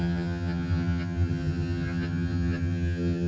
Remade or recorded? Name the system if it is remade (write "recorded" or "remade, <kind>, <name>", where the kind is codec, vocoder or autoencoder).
remade, vocoder, HiFi-GAN